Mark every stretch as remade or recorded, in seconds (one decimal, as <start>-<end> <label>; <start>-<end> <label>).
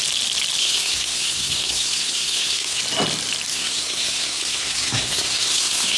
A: 0.0-0.6 recorded; 0.6-2.8 remade; 2.8-3.5 recorded; 3.5-6.0 remade